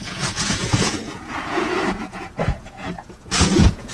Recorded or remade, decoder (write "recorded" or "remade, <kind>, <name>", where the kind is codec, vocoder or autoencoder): remade, vocoder, Vocos